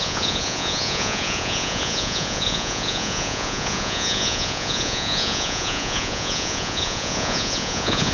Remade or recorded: remade